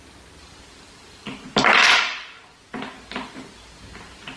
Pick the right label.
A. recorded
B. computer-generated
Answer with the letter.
A